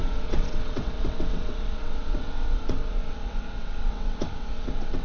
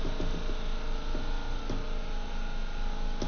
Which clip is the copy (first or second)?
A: first